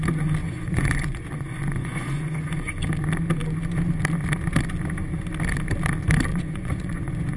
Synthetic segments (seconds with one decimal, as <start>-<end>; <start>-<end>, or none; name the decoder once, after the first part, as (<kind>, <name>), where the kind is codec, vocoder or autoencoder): 0.4-2.7 (vocoder, Vocos); 6.3-7.4